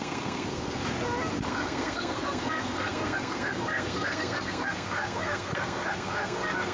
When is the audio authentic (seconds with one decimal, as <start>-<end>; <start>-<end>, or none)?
0.8-1.5